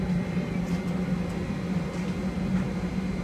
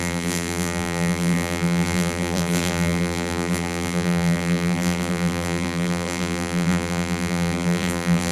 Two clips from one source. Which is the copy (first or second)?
second